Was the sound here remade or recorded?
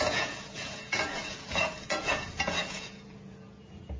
remade